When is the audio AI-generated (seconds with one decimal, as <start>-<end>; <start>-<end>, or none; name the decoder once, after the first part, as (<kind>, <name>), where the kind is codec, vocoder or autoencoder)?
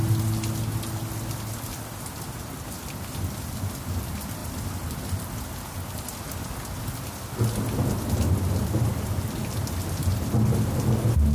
none